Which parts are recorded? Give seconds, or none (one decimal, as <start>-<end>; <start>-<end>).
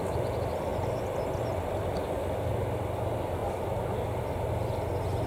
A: 0.0-5.3